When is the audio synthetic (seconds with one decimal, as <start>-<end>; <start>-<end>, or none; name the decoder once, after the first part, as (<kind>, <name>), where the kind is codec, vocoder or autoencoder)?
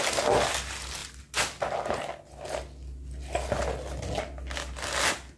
none